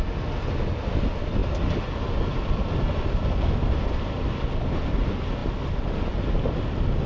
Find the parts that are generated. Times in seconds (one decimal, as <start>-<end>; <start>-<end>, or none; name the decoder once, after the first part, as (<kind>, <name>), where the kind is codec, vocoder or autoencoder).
none